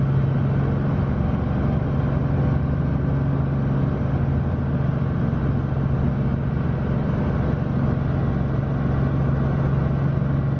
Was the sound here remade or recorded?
recorded